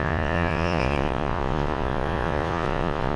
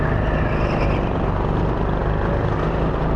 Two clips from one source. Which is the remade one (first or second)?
first